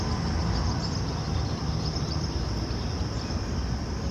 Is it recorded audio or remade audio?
remade